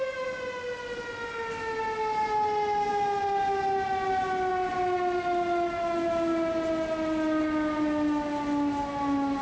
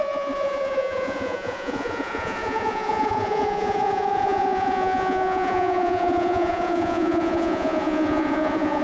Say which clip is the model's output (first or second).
second